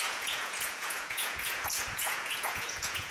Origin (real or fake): fake